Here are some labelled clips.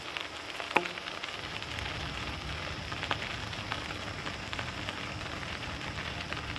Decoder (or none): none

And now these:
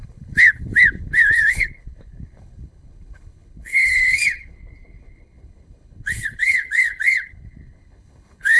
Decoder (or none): codec, HILCodec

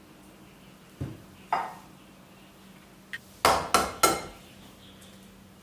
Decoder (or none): none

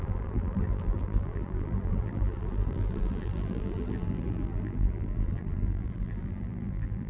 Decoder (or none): vocoder, BigVGAN v2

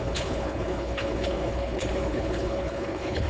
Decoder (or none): codec, HILCodec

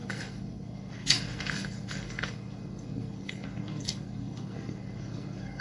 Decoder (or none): codec, SNAC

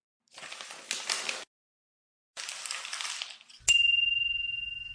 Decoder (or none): none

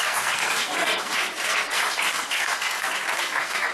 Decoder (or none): codec, SNAC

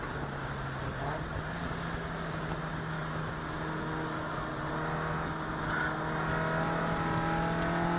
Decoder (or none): none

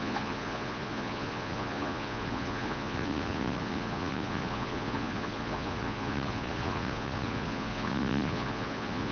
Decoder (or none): vocoder, Vocos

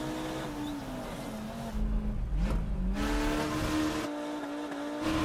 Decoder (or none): none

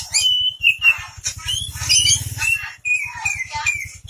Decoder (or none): none